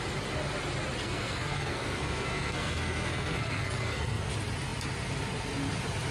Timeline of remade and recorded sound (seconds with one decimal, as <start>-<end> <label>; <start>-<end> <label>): 0.0-1.0 recorded; 1.0-4.3 remade; 4.3-6.1 recorded